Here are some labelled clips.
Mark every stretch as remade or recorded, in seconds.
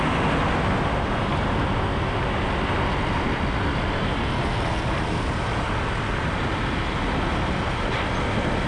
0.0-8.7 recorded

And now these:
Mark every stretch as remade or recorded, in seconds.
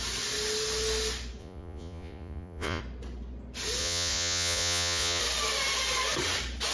0.0-1.4 recorded; 1.4-2.8 remade; 2.8-3.8 recorded; 3.8-5.2 remade; 5.2-6.7 recorded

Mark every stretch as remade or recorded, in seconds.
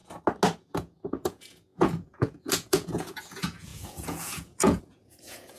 0.0-0.6 recorded; 0.6-5.6 remade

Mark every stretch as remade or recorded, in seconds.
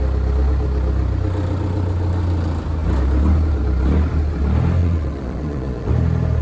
0.0-4.8 recorded; 4.8-5.9 remade; 5.9-6.4 recorded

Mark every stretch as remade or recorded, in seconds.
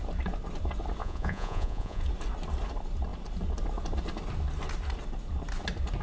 0.0-1.0 recorded; 1.0-2.0 remade; 2.0-6.0 recorded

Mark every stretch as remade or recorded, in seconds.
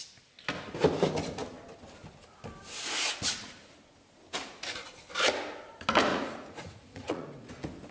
0.0-6.1 recorded; 6.1-7.5 remade; 7.5-7.9 recorded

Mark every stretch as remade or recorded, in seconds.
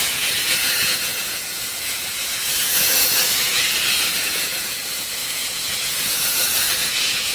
0.0-7.3 remade